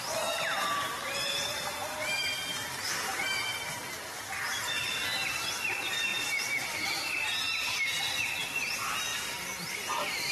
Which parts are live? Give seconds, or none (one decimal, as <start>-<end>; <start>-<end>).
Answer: 0.0-10.3

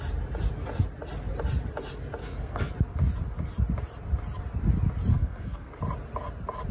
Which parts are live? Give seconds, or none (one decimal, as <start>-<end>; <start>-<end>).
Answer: 0.0-2.2; 2.7-5.1; 5.7-6.7

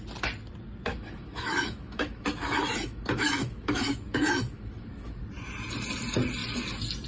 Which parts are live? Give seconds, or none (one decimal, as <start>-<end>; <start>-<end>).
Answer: 0.0-0.9; 5.2-7.1

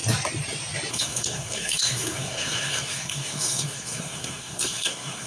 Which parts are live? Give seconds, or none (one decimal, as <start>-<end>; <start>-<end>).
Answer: 0.0-0.9

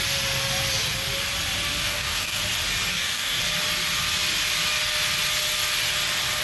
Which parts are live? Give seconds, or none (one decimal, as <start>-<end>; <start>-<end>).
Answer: 0.0-1.8; 2.4-2.9; 3.4-6.4

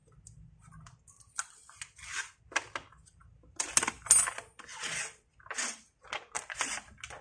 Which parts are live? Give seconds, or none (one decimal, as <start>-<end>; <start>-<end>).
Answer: 0.0-7.2